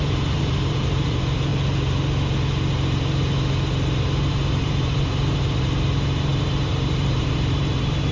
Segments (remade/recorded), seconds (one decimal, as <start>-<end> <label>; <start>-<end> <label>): 0.0-1.5 remade; 1.5-3.7 recorded; 3.7-8.1 remade